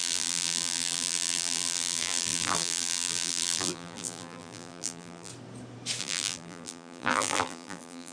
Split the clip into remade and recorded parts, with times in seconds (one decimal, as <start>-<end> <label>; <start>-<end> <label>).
0.0-5.3 remade; 5.3-6.0 recorded; 6.0-8.1 remade